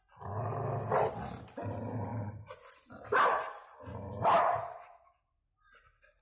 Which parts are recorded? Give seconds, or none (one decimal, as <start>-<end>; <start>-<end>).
0.0-6.2